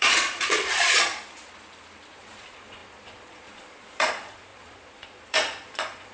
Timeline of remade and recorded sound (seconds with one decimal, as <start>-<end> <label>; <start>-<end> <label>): 0.0-1.1 remade; 1.1-2.1 recorded; 2.1-6.1 remade